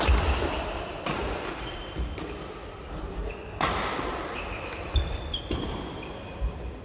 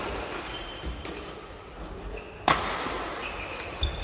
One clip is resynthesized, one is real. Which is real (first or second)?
second